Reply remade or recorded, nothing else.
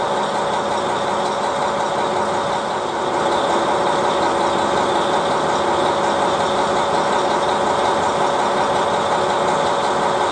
recorded